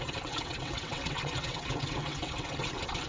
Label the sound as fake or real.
fake